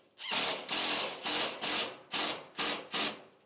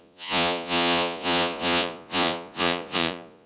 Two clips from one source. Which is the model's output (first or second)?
second